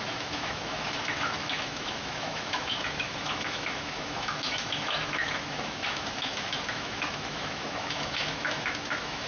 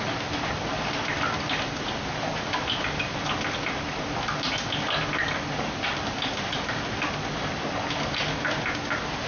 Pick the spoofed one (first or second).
first